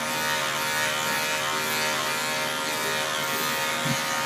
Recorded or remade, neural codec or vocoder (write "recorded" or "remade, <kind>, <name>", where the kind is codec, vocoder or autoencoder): recorded